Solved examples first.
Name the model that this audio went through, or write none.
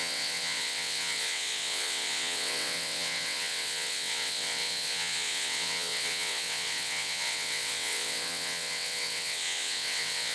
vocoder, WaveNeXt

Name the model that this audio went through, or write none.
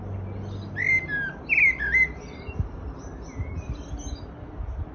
none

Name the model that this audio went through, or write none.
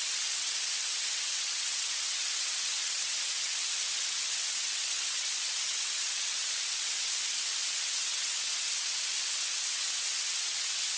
vocoder, WaveNeXt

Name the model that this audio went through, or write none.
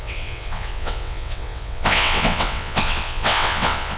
vocoder, WaveNeXt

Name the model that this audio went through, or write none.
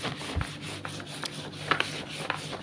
none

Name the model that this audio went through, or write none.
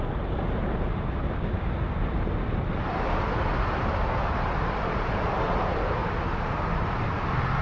none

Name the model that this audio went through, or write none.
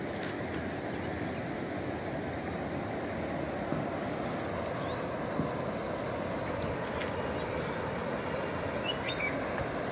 none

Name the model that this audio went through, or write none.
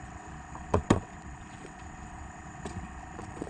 vocoder, WaveNeXt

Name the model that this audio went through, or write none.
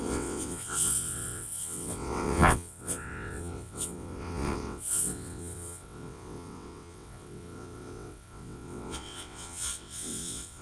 vocoder, WaveNeXt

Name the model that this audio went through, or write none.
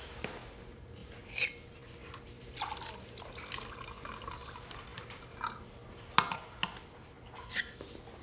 none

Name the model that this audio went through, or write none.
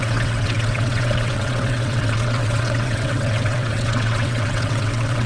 vocoder, WaveNeXt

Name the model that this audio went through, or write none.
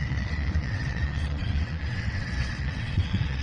vocoder, WaveNeXt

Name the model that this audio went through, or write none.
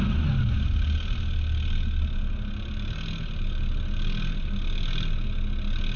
none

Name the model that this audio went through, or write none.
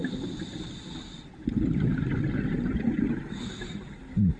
none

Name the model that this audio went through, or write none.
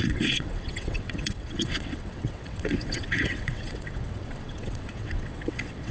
vocoder, WaveNeXt